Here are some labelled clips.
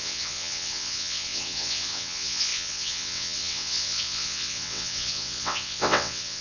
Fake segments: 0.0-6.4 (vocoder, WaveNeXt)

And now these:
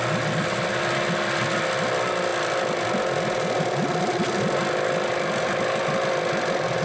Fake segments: none

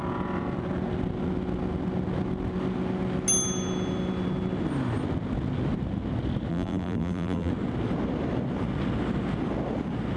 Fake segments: 6.5-7.5 (vocoder, BigVGAN v2)

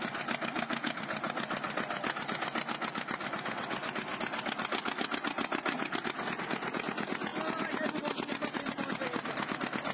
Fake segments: none

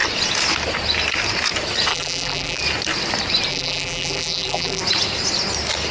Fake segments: 1.9-2.6 (vocoder, BigVGAN v2); 3.5-4.8

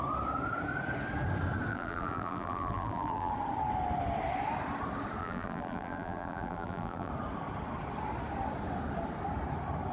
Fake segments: 1.7-3.3 (vocoder, BigVGAN v2); 5.2-7.1